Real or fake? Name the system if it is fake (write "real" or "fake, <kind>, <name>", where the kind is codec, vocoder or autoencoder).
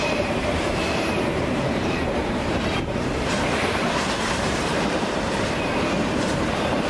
fake, vocoder, BigVGAN v2